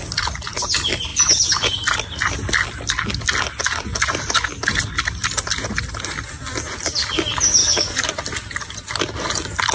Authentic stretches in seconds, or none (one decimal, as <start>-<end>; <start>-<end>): 0.0-7.6; 8.1-9.7